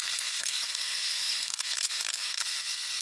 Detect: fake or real fake